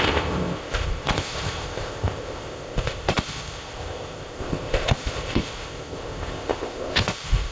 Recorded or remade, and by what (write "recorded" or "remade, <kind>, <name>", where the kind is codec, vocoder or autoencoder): remade, codec, ZipCodec